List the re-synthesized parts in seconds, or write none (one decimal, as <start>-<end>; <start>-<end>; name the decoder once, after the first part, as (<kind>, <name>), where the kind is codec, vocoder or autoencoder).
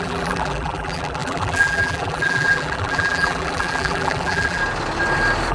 0.0-4.6 (vocoder, BigVGAN v2)